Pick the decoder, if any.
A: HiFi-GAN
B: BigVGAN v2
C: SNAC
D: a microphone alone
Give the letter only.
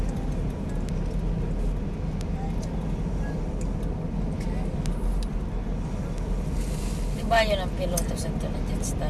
D